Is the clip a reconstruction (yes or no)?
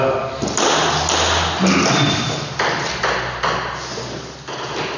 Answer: no